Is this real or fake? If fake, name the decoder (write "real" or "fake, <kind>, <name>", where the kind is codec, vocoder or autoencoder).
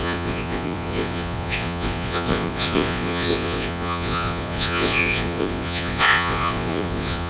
fake, vocoder, Vocos